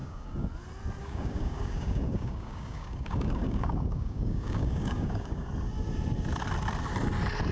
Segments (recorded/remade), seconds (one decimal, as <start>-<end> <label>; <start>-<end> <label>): 0.0-0.5 remade; 0.5-1.0 recorded; 1.0-5.5 remade; 5.5-7.5 recorded